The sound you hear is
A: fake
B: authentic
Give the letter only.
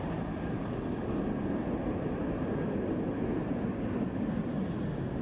B